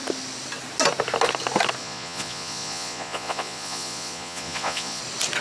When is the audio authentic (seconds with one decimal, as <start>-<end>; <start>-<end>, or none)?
0.0-1.8; 5.0-5.4